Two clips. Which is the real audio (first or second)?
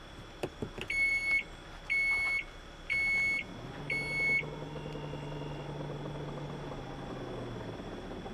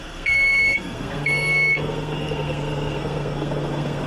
first